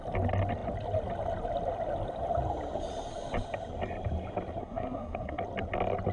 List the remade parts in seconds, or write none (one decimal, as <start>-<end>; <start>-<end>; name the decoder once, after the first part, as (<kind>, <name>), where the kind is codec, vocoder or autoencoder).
4.6-5.4 (codec, SNAC)